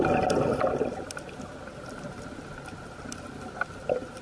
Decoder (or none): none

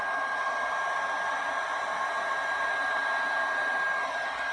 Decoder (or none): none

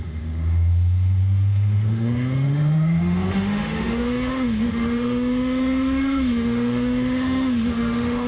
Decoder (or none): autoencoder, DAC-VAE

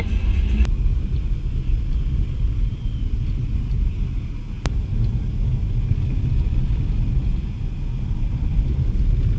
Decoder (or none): none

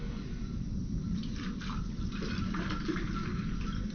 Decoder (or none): none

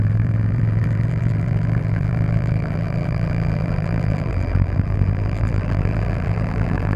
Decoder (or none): vocoder, BigVGAN v2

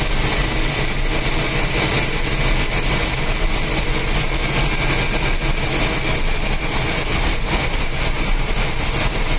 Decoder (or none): none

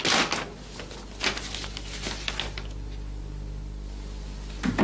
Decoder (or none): none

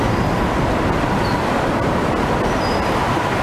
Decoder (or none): none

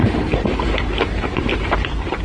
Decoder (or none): none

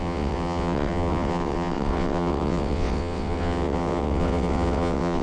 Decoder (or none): vocoder, WaveNeXt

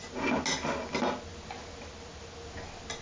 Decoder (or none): none